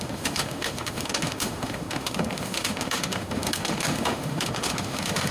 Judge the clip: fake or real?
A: fake